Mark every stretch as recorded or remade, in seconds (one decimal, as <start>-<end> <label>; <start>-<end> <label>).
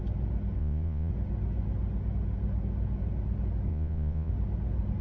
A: 0.0-0.6 recorded; 0.6-1.1 remade; 1.1-3.7 recorded; 3.7-4.3 remade; 4.3-5.0 recorded